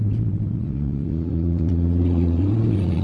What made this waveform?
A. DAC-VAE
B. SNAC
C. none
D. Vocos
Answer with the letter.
D